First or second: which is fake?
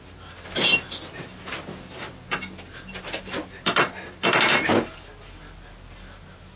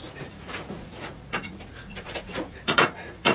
second